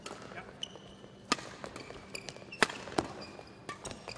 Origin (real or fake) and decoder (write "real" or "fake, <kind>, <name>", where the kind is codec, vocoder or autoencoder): real